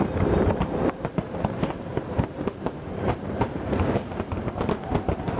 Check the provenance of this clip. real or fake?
fake